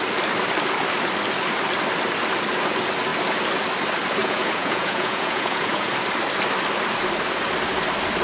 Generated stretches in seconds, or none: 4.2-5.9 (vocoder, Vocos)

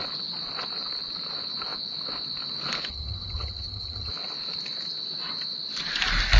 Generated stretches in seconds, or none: 2.9-4.1 (vocoder, HiFi-GAN)

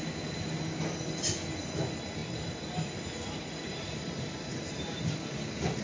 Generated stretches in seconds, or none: none

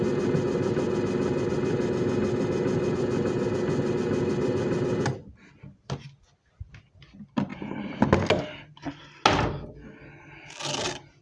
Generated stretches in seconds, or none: none

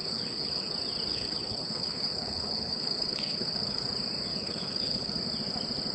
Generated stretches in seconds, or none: 0.0-0.7 (codec, HILCodec); 1.1-3.8; 4.3-5.2

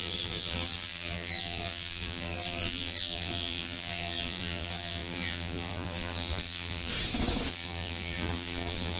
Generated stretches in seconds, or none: 0.0-6.9 (vocoder, BigVGAN v2); 7.5-9.0